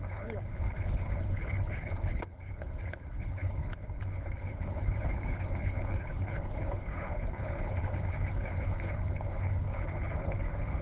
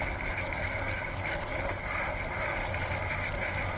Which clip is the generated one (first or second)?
first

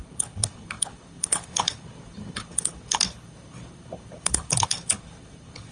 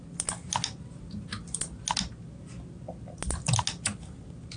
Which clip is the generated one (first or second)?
first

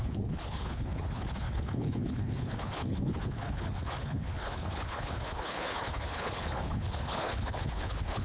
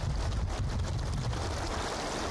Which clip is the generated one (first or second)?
first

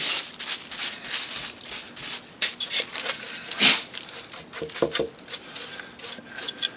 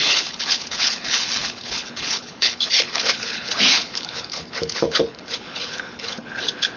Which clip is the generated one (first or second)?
second